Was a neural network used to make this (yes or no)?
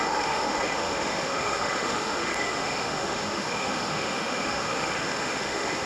yes